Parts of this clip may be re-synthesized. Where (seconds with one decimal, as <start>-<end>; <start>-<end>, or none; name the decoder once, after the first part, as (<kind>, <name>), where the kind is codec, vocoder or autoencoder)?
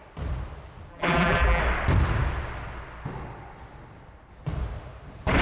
0.9-1.6 (vocoder, BigVGAN v2)